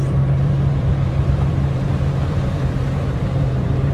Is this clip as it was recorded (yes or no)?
no